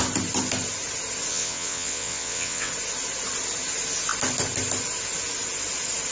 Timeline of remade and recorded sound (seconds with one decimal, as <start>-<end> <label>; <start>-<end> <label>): 0.0-1.3 recorded; 1.3-2.7 remade; 2.7-6.1 recorded